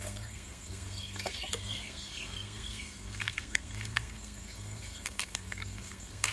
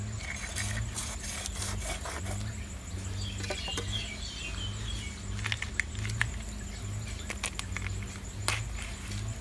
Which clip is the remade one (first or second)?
first